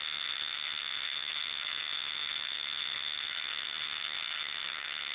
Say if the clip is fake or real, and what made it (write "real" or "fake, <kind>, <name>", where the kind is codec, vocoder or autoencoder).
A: fake, vocoder, HiFi-GAN